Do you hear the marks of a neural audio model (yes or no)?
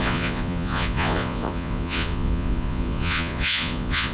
yes